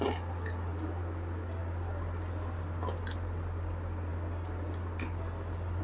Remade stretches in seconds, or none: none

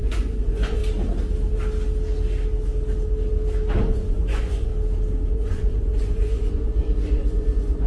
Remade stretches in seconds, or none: 0.0-0.8 (vocoder, Vocos); 3.8-4.7; 5.3-7.9

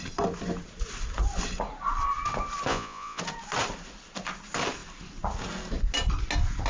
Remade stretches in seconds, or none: 2.7-3.2 (vocoder, Vocos)

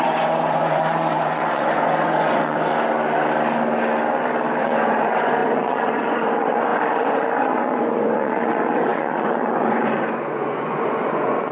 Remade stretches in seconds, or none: 0.0-2.7 (vocoder, Vocos); 4.6-11.5